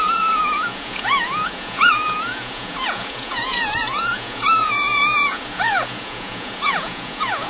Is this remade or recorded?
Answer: remade